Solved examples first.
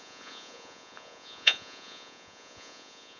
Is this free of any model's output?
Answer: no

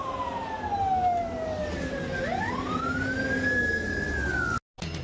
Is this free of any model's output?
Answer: yes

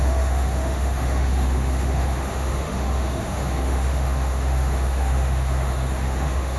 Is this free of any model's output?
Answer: no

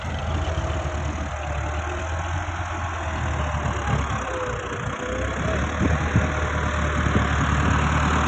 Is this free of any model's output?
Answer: yes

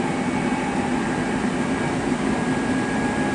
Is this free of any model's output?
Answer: yes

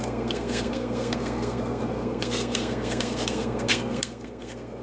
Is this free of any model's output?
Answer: no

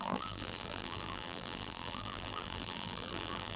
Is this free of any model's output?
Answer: no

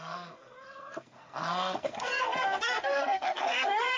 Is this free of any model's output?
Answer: no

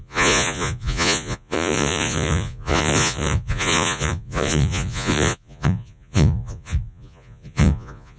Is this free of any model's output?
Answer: no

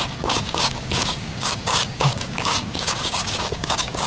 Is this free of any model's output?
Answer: no